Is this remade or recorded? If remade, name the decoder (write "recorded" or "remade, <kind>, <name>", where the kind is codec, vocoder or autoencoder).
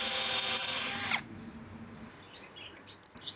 recorded